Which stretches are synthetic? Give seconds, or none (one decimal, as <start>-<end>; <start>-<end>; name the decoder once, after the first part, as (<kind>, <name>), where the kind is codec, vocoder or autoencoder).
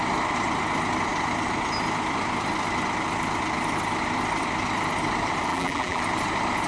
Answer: 5.5-6.0 (vocoder, BigVGAN v2)